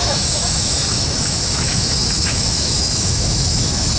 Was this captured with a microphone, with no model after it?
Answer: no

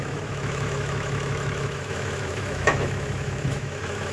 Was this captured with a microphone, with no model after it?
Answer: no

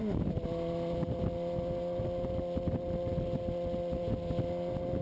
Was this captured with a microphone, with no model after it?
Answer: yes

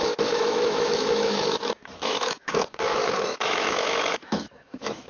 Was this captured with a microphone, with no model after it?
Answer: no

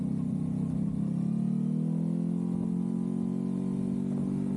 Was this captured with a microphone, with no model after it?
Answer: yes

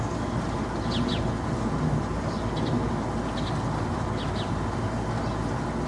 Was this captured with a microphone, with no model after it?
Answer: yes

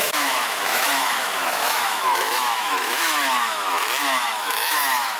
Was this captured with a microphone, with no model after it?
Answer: no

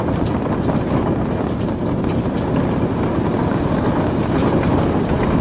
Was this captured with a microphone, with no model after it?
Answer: yes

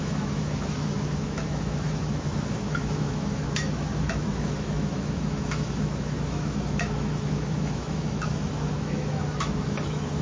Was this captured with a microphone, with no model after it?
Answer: no